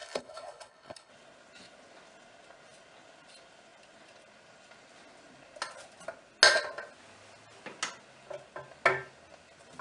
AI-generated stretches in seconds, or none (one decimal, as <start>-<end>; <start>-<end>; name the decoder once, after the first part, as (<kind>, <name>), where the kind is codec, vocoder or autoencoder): 0.0-1.1 (codec, HILCodec)